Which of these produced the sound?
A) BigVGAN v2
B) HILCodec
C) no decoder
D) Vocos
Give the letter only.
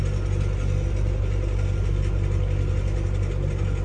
C